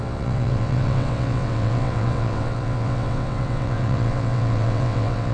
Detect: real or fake fake